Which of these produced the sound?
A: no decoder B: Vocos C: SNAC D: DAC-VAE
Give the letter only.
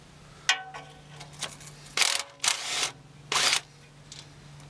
A